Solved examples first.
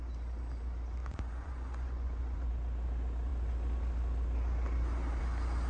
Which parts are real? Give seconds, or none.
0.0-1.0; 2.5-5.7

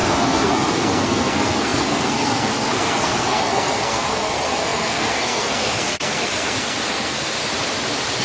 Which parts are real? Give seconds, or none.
7.4-8.2